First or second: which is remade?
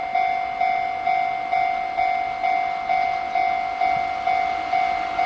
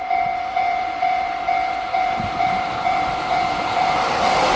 second